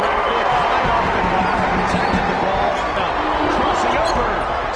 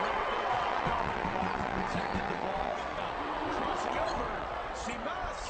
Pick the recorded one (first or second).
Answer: first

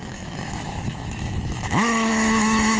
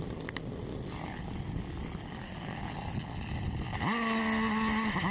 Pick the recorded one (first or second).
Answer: second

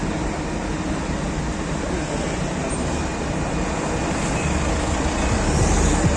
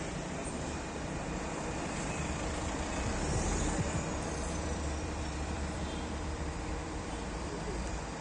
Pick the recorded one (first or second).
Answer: first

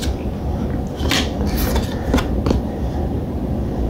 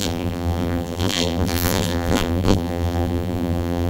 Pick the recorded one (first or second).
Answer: first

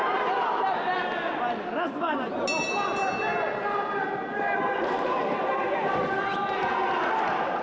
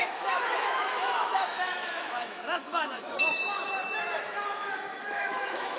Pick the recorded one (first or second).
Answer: first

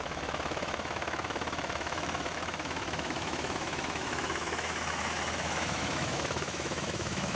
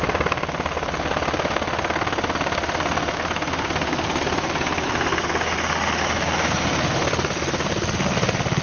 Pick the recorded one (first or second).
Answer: second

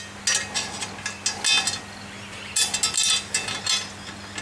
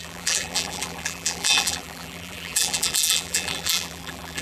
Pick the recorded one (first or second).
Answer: first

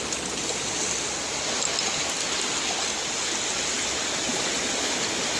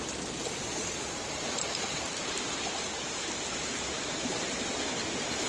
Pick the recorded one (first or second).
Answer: first